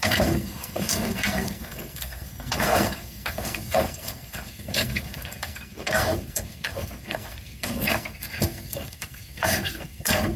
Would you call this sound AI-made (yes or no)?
yes